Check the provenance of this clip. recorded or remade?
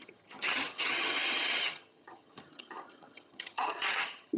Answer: remade